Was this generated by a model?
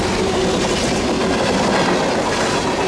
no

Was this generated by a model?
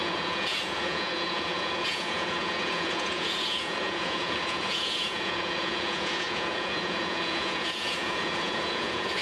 yes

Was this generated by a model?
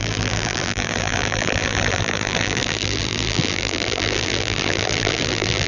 yes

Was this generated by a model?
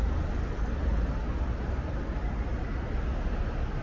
no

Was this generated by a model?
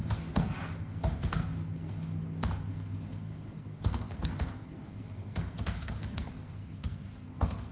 yes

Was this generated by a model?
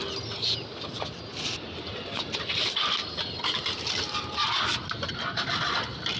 no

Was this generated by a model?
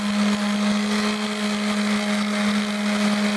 no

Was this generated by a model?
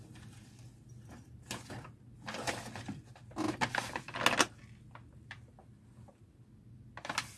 no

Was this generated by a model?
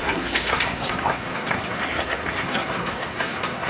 yes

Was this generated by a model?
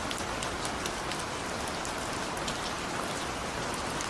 no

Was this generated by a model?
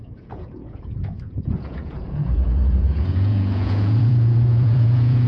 yes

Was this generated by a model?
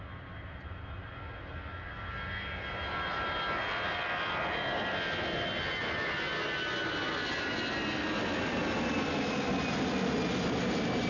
no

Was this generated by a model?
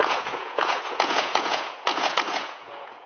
yes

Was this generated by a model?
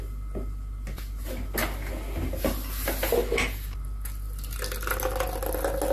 no